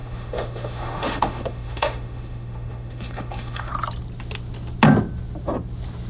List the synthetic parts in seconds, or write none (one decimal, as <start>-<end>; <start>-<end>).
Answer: 0.0-3.7